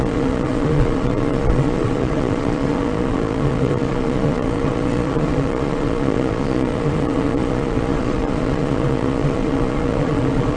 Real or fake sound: fake